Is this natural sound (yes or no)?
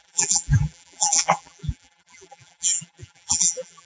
no